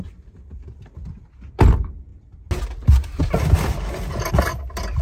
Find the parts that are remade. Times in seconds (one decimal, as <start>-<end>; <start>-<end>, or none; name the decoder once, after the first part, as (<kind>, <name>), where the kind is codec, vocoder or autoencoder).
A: none